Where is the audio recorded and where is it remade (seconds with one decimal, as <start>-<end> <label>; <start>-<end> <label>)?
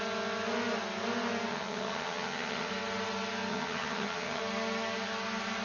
0.0-1.5 recorded; 1.5-2.7 remade; 2.7-3.5 recorded; 3.5-4.4 remade; 4.4-5.6 recorded